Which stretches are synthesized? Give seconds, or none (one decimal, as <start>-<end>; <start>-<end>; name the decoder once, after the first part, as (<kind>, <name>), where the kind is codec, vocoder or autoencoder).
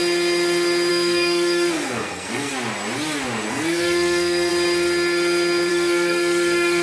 0.9-2.5 (codec, SNAC); 3.5-4.5; 5.7-6.8